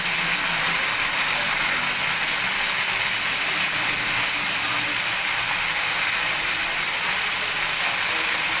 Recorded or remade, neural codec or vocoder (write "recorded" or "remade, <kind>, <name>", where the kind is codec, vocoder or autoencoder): recorded